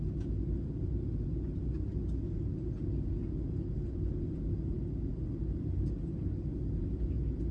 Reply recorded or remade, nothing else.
recorded